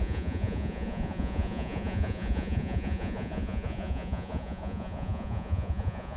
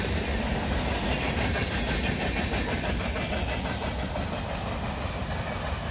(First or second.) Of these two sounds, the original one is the second